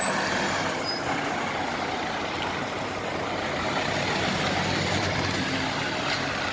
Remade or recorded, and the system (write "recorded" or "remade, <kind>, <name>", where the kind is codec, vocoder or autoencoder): recorded